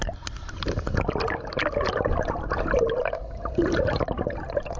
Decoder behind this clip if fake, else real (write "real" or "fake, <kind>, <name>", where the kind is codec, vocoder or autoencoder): real